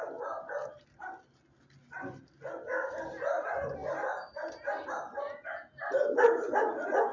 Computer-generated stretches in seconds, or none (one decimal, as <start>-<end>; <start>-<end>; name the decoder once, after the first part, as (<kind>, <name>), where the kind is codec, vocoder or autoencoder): none